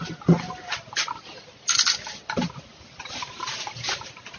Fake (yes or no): no